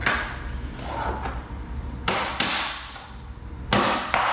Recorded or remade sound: recorded